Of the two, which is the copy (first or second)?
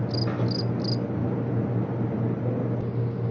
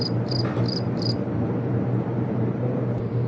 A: second